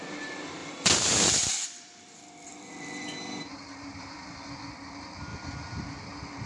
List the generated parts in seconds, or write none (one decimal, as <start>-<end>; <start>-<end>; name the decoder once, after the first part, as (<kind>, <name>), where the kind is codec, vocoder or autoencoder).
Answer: 0.6-4.5 (vocoder, BigVGAN v2); 5.3-6.0